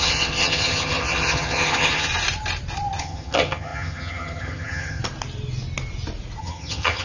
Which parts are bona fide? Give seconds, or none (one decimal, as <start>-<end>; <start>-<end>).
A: 2.1-3.0; 5.0-6.4